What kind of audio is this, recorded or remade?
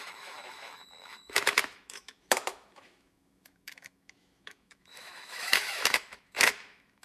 remade